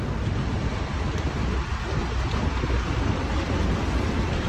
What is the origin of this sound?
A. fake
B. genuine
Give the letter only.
B